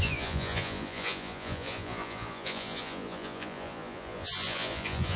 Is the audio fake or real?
fake